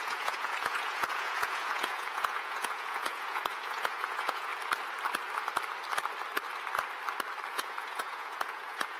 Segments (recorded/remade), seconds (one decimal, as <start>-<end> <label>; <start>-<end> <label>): 0.0-4.5 remade; 4.5-7.5 recorded; 7.5-9.0 remade